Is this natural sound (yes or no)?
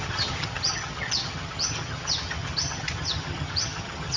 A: no